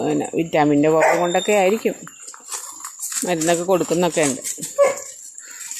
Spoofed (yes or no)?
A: no